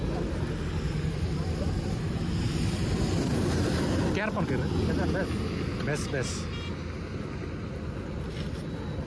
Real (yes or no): yes